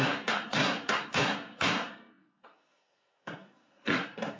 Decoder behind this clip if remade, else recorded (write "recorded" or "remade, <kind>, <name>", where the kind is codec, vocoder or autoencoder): remade, codec, SNAC